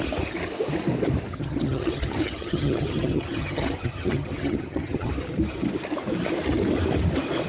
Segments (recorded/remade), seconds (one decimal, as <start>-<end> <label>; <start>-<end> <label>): 0.0-1.3 recorded; 1.3-5.1 remade; 5.1-7.5 recorded